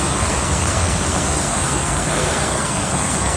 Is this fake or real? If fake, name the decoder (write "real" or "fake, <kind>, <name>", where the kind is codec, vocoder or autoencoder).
fake, codec, SNAC